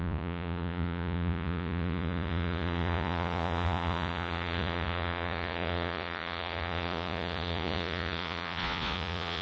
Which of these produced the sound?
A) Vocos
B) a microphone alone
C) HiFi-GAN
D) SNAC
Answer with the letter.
A